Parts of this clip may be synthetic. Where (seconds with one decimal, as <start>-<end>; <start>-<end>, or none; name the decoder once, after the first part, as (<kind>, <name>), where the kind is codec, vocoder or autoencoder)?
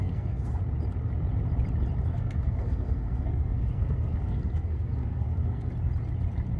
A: 0.0-0.6 (codec, SNAC); 2.1-5.7